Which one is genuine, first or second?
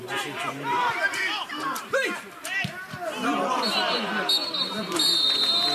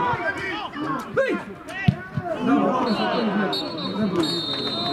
second